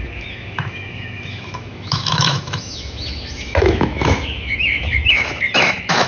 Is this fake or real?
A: fake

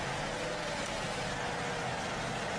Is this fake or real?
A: real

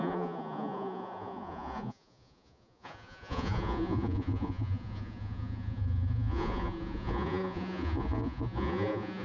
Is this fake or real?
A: fake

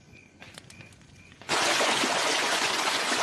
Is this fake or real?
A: fake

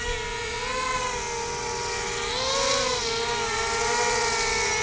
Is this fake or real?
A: real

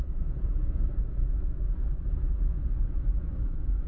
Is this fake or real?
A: fake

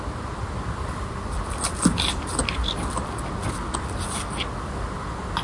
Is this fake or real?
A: real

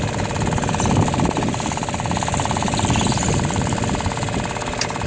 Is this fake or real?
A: real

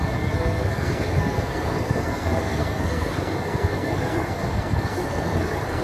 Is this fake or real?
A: fake